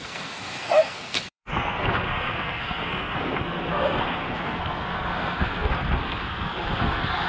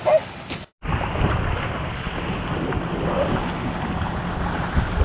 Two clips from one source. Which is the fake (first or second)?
first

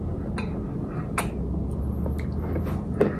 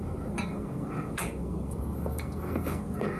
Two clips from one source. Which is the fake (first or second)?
second